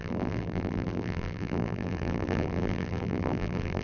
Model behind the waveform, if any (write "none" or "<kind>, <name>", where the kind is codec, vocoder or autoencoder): vocoder, BigVGAN v2